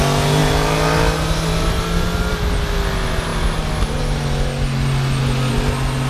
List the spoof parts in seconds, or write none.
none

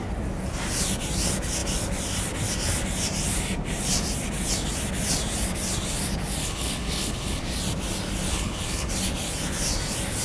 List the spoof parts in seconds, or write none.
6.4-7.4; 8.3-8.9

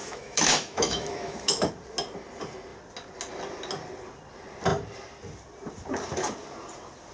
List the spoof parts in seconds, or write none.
0.0-1.7

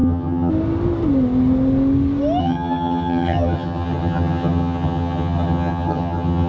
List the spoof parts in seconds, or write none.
0.0-0.5; 2.4-6.5